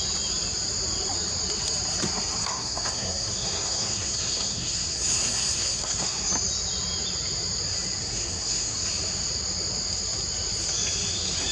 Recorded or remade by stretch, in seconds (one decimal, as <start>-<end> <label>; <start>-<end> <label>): 0.0-2.4 recorded; 2.4-6.3 remade; 6.3-8.0 recorded; 8.0-8.9 remade; 8.9-11.5 recorded